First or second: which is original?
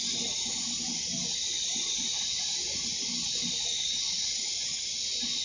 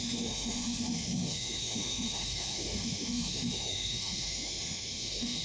first